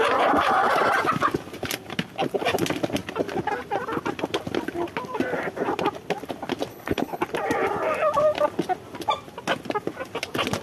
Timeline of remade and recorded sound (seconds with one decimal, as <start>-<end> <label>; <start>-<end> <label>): 0.0-6.7 recorded; 6.7-7.2 remade; 7.2-10.6 recorded